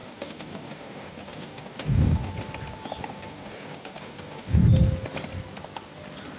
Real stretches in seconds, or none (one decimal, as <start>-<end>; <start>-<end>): 2.3-3.0; 4.6-6.4